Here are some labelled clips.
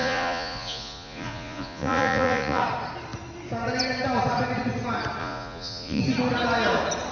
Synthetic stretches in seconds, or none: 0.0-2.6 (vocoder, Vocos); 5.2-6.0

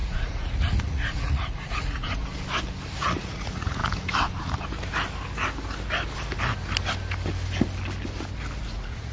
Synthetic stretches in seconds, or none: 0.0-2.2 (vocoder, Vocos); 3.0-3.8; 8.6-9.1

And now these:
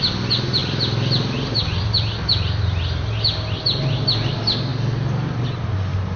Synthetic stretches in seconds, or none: none